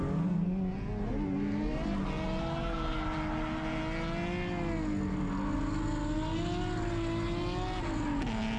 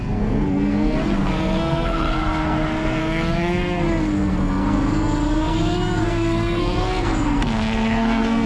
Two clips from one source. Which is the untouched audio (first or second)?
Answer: first